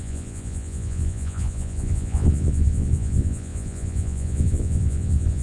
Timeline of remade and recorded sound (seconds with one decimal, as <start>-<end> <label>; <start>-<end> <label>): 0.0-5.4 remade